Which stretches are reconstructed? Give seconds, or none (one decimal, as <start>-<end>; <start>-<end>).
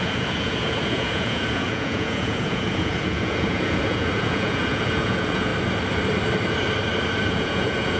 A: 0.0-5.5; 7.3-8.0